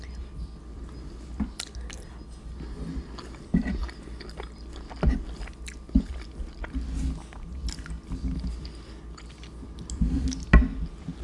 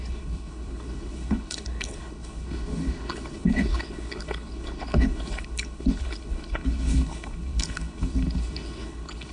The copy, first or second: second